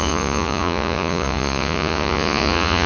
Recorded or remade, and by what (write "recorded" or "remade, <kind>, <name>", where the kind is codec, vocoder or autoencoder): remade, vocoder, Vocos